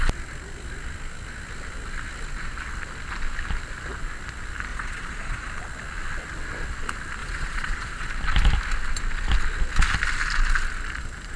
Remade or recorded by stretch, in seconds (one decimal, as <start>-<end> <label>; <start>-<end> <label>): 0.0-4.7 recorded; 4.7-5.5 remade; 5.5-7.2 recorded; 7.2-8.1 remade; 8.1-11.4 recorded